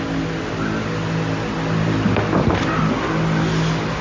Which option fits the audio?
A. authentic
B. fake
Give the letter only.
A